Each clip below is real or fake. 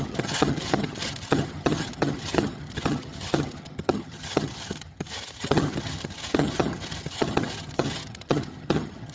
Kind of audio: fake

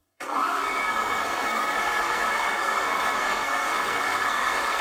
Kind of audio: fake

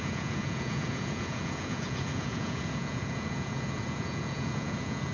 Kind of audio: fake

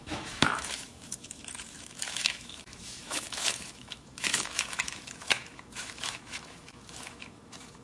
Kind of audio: fake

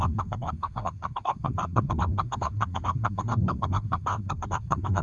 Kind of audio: fake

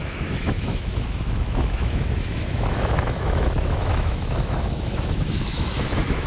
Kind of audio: fake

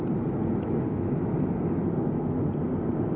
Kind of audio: real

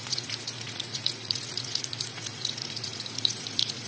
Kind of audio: fake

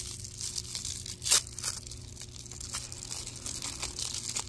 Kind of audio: real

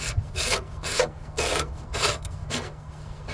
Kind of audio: fake